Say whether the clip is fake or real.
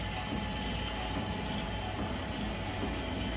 real